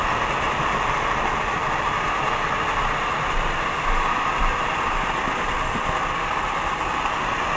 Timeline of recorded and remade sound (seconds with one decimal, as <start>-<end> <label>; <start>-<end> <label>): 0.0-7.6 recorded